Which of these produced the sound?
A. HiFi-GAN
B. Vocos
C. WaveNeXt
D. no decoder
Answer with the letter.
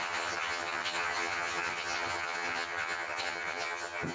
A